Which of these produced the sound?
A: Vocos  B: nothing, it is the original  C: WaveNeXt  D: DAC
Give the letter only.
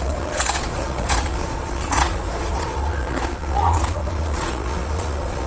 A